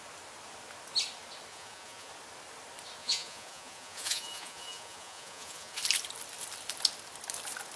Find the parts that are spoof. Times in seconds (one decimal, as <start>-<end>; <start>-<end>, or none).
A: 1.5-2.1; 3.0-5.8